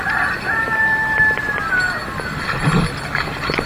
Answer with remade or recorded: recorded